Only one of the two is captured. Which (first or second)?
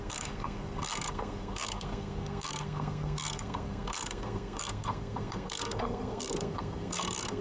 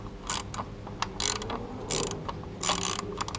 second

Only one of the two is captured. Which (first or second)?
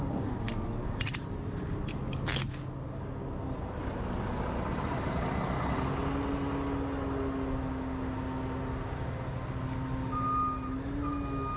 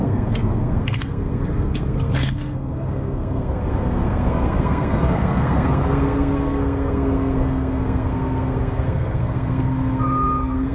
first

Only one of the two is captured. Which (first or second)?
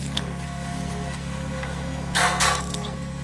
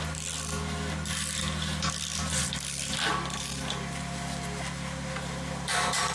second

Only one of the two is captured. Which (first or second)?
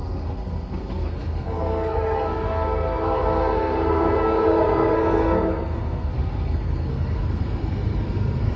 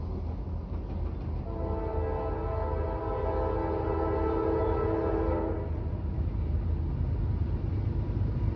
second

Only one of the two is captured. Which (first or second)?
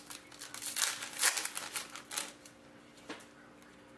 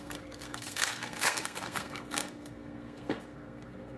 first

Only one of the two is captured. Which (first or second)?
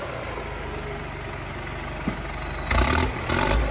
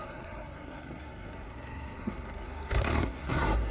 first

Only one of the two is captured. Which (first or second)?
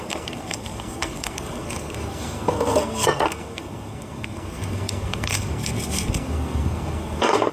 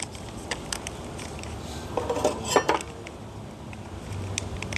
second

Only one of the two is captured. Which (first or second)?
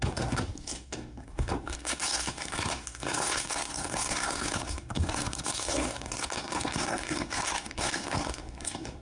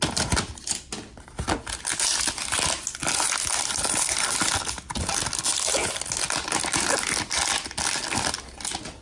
second